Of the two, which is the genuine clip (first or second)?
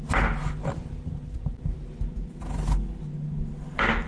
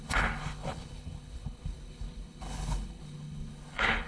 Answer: first